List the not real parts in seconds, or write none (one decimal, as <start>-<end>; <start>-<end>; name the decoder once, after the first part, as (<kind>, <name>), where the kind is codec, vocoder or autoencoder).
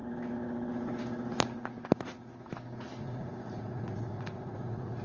3.0-5.0 (vocoder, Vocos)